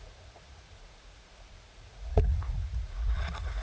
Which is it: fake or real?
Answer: fake